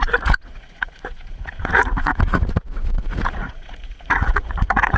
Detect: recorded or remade remade